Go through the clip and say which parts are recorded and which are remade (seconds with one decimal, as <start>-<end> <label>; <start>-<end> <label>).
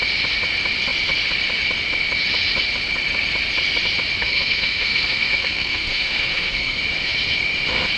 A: 0.0-4.2 recorded; 4.2-6.8 remade; 6.8-8.0 recorded